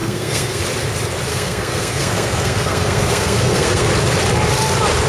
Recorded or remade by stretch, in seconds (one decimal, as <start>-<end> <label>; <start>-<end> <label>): 0.0-0.6 remade; 0.6-1.3 recorded; 1.3-3.9 remade; 3.9-5.1 recorded